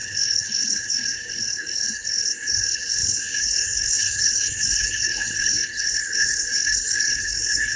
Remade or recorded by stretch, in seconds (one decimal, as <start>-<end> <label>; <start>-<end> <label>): 0.0-7.8 remade